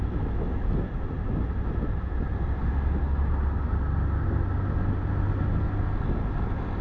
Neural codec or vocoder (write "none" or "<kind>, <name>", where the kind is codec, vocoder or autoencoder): none